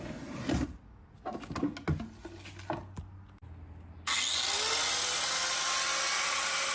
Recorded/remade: recorded